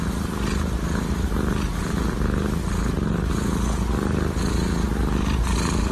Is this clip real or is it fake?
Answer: real